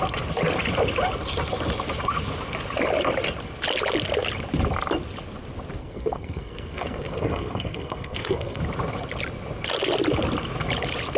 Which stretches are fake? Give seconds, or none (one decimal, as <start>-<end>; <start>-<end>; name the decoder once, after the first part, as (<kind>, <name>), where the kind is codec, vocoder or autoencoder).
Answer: 5.8-8.6 (codec, SNAC)

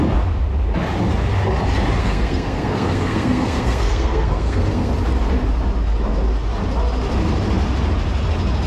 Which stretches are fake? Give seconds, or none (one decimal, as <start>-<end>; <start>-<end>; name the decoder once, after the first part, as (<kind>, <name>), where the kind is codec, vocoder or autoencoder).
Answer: 2.0-4.9 (codec, SNAC)

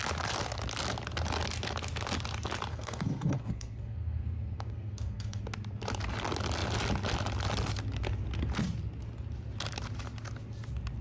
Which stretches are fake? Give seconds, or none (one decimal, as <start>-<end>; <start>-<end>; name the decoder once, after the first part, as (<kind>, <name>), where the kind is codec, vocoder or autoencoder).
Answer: 2.7-5.4 (codec, SNAC)

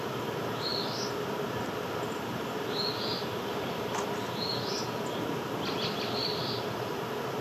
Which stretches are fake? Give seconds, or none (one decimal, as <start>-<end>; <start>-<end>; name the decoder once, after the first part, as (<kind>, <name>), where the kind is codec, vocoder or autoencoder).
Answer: none

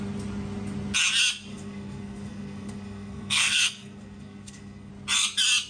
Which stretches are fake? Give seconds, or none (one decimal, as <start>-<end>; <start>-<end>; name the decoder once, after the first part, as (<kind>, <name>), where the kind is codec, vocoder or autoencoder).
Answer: 1.5-4.9 (codec, SNAC)

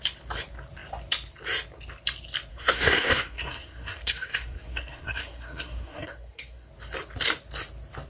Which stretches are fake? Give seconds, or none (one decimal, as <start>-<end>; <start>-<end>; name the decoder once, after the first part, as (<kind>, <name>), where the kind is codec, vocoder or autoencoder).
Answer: 2.5-6.7 (codec, SNAC)

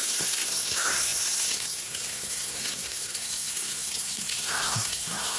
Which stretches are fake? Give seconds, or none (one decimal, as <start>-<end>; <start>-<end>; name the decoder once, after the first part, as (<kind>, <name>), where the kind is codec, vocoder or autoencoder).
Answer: 0.0-5.4 (codec, SNAC)